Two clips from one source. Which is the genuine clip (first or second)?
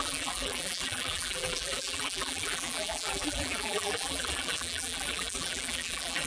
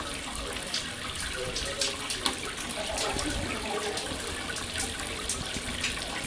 second